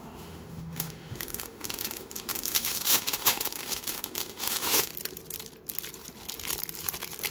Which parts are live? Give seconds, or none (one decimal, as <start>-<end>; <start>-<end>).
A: 4.9-7.3